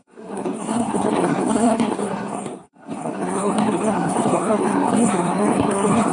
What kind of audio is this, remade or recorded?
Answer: remade